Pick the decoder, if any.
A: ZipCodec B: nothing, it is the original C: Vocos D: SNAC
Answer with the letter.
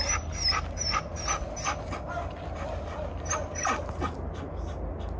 B